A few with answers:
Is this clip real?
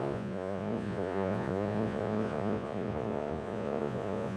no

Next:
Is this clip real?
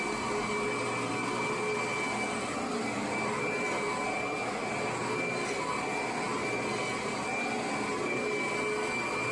yes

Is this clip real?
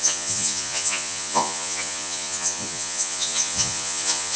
no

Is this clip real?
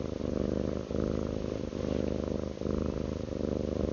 yes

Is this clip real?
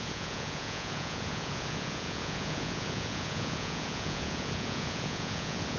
no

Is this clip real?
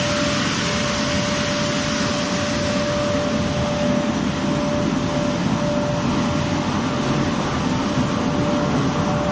yes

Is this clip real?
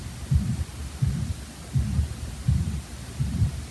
yes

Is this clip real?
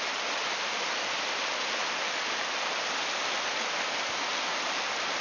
yes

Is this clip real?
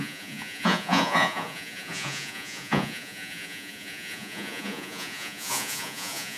no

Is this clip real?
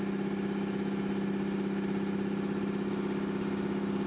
yes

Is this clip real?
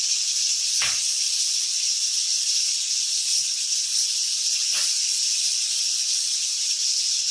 no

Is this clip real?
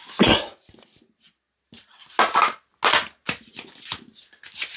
yes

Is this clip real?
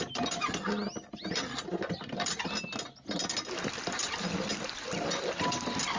yes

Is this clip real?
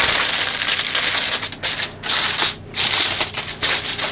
yes